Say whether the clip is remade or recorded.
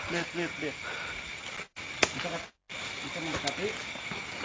recorded